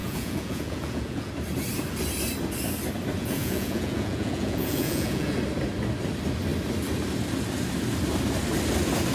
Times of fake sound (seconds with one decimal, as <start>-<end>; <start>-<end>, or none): 0.0-1.3; 3.2-5.4